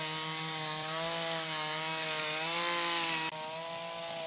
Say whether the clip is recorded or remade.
recorded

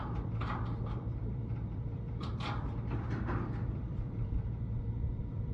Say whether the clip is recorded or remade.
remade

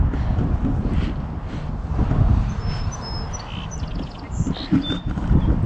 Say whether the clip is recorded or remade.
recorded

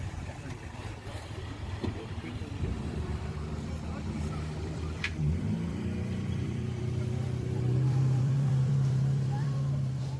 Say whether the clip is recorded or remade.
remade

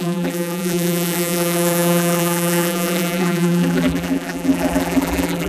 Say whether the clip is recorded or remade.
remade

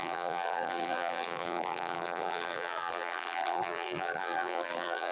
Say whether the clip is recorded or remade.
remade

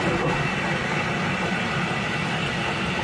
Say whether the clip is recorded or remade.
recorded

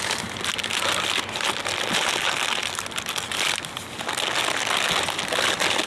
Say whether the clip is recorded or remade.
recorded